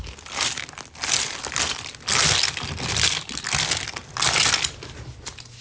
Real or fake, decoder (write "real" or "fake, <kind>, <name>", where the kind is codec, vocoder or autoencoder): real